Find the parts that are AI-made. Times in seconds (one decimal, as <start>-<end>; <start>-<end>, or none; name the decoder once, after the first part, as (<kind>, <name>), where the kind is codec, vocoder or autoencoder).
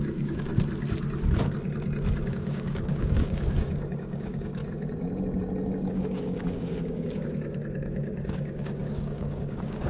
0.0-0.5 (codec, DAC); 2.3-4.6; 5.9-9.9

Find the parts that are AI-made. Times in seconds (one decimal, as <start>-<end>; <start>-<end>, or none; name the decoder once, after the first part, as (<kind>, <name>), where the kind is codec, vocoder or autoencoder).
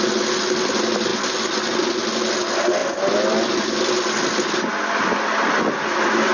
none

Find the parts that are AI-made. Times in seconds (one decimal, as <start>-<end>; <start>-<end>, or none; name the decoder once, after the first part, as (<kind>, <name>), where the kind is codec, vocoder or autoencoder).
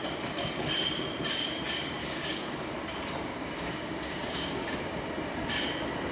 2.0-2.7 (codec, DAC); 3.3-4.7